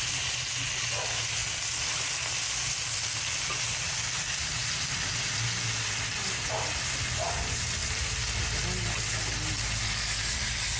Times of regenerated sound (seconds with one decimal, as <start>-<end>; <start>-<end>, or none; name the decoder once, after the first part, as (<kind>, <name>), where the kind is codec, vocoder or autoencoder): none